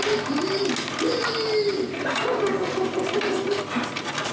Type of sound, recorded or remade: recorded